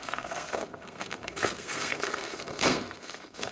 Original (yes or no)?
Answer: no